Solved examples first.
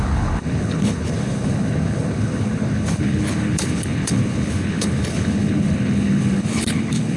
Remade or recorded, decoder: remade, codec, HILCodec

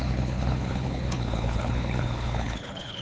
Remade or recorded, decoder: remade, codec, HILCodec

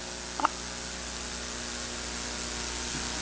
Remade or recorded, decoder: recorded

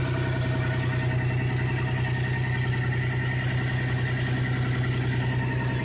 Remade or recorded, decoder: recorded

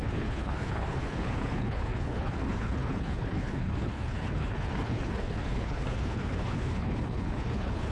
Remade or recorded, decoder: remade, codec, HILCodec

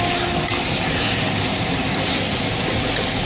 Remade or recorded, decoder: recorded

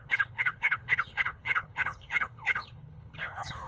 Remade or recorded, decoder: remade, codec, HILCodec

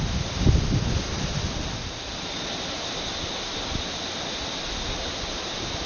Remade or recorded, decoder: recorded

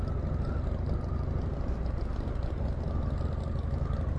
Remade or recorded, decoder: recorded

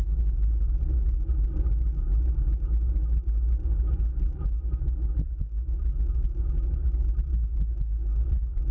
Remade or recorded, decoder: recorded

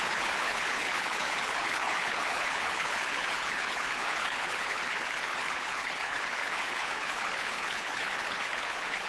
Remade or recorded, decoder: remade, codec, HILCodec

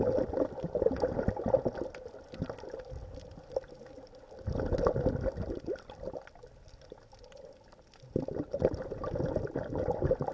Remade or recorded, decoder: recorded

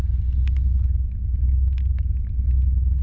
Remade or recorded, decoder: recorded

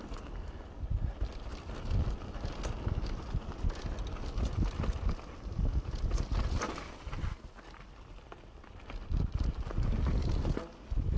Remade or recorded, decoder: recorded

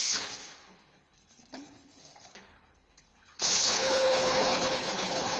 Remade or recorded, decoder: remade, codec, HILCodec